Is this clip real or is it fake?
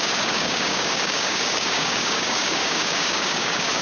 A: fake